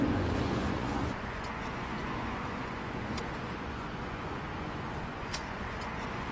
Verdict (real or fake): fake